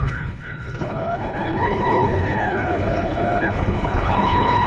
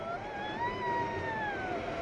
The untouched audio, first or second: second